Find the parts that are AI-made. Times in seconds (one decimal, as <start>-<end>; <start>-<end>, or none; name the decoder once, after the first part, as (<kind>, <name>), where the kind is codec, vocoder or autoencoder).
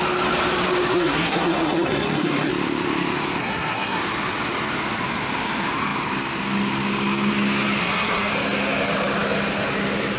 0.9-2.5 (codec, SNAC); 3.4-4.0; 7.8-8.3